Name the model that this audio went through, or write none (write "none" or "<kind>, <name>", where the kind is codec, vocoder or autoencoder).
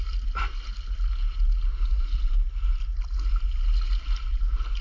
none